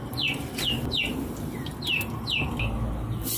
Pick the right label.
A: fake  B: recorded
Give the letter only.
B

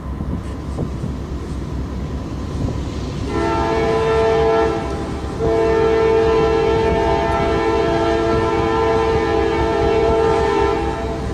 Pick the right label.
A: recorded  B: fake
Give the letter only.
A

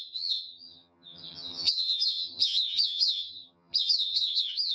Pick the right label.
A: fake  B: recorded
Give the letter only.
A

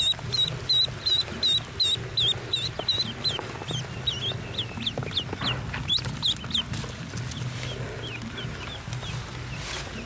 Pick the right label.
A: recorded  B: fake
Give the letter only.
A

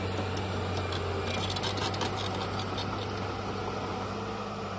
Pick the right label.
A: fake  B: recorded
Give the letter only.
B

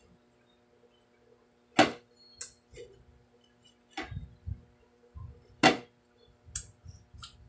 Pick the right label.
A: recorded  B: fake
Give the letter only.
A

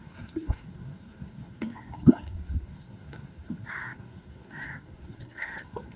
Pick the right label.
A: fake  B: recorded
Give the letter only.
A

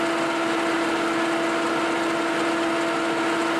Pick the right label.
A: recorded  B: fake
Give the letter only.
A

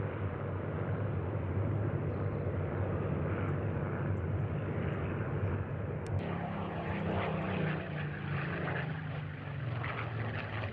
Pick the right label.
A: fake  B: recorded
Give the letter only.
B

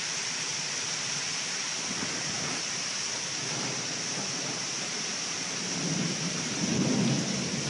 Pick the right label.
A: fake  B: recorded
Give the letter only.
A